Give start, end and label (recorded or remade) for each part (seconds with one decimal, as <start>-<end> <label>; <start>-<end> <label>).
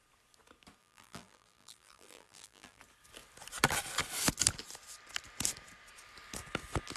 0.0-0.8 recorded; 0.8-2.8 remade; 2.8-7.0 recorded